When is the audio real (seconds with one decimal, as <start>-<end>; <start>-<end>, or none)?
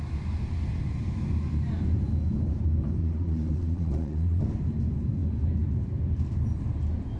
0.0-3.0; 4.4-7.2